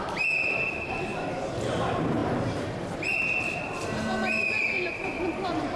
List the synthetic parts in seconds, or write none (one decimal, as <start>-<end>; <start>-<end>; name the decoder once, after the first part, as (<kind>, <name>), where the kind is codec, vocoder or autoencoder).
0.0-1.1 (vocoder, BigVGAN v2); 1.8-5.8